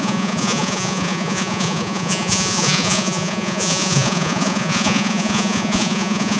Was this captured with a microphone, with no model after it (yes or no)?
no